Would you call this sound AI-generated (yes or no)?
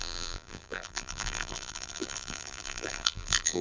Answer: yes